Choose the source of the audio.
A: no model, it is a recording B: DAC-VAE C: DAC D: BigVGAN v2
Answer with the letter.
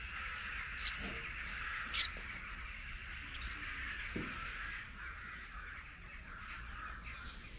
A